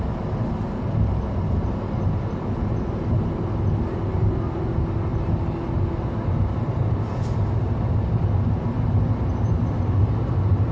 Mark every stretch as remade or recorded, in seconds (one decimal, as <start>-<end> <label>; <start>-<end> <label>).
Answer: 0.0-10.7 recorded